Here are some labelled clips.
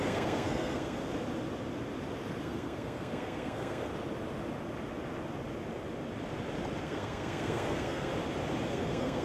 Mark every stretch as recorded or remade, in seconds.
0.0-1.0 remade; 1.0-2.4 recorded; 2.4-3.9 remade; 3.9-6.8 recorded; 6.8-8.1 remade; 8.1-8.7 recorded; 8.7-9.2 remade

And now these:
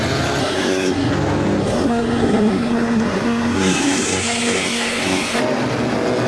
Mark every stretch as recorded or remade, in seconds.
0.0-0.4 recorded; 0.4-1.1 remade; 1.1-1.6 recorded; 1.6-5.4 remade; 5.4-6.3 recorded

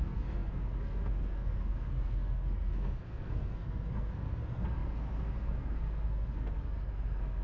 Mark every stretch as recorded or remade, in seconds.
0.0-7.4 remade

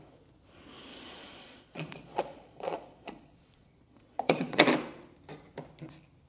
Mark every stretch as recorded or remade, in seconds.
0.0-0.9 recorded; 0.9-4.7 remade; 4.7-6.3 recorded

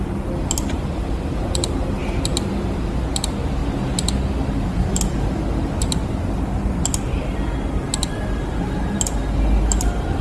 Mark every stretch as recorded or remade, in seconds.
0.0-10.2 recorded

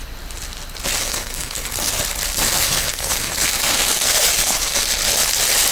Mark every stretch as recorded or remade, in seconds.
0.0-1.0 recorded; 1.0-1.9 remade; 1.9-2.3 recorded; 2.3-4.8 remade; 4.8-5.7 recorded

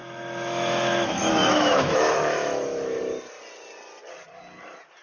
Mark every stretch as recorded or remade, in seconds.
0.0-3.0 remade; 3.0-5.0 recorded